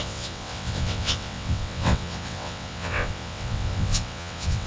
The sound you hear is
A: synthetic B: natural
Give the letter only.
A